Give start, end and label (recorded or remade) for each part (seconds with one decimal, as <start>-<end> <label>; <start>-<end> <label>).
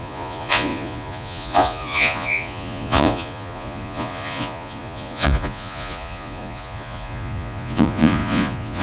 0.0-8.8 remade